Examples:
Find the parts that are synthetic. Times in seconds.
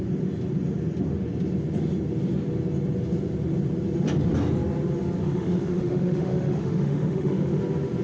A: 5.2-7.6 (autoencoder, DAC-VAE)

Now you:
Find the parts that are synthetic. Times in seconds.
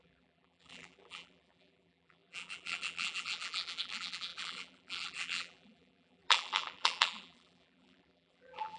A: 0.0-8.8 (vocoder, BigVGAN v2)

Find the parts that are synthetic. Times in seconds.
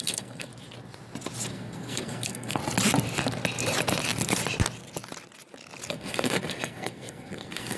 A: 0.0-0.5 (codec, SNAC); 1.5-2.6; 5.9-7.8